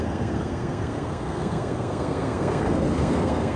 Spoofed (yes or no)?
yes